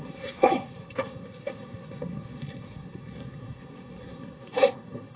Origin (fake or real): fake